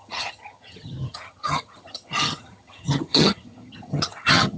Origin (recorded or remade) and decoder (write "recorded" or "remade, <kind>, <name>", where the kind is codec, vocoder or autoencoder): remade, vocoder, HiFi-GAN